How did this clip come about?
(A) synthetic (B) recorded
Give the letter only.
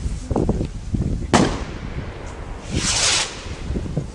B